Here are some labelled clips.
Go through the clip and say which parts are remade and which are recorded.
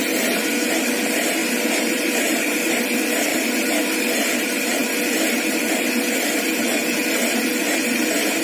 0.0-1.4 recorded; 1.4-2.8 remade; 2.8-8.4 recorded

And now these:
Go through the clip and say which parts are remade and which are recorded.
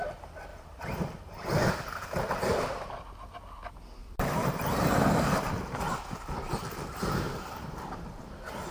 0.0-0.5 recorded; 0.5-2.9 remade; 2.9-4.0 recorded; 4.0-8.2 remade; 8.2-8.7 recorded